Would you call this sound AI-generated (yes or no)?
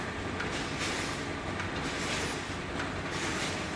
no